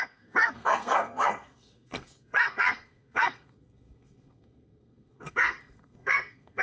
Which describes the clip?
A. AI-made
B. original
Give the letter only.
A